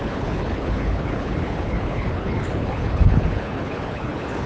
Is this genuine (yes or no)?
no